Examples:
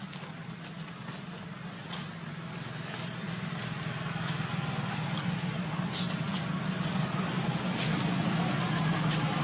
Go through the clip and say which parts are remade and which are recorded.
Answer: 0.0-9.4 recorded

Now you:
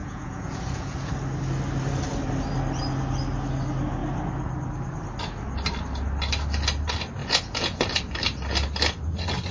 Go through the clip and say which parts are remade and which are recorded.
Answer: 0.0-1.1 remade; 1.1-7.2 recorded; 7.2-7.8 remade; 7.8-9.5 recorded

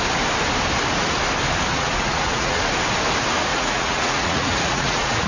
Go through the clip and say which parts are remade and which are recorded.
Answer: 0.0-1.7 recorded; 1.7-2.6 remade; 2.6-3.5 recorded; 3.5-5.3 remade

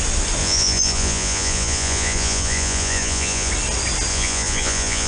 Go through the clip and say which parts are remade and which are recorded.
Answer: 0.0-0.4 recorded; 0.4-3.5 remade; 3.5-4.1 recorded; 4.1-5.1 remade

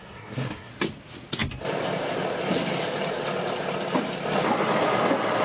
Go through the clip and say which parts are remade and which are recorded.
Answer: 0.0-0.7 remade; 0.7-5.4 recorded

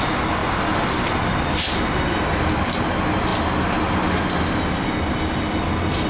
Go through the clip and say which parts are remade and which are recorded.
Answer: 0.0-6.1 recorded

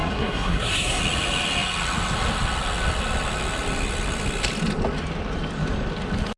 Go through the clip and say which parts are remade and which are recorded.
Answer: 0.0-1.0 remade; 1.0-6.4 recorded